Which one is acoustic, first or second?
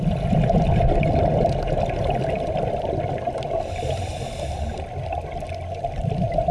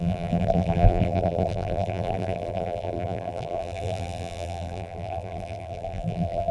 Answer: first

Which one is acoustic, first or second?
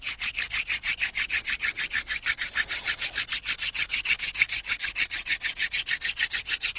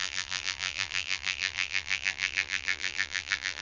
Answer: first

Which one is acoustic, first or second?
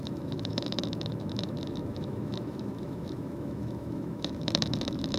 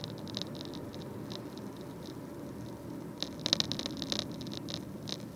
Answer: second